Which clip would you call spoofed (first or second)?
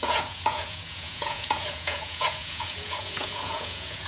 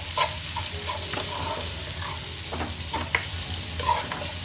first